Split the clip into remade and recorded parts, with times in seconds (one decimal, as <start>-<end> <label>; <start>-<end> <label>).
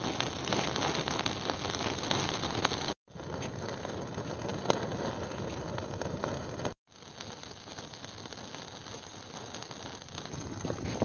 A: 0.0-11.0 recorded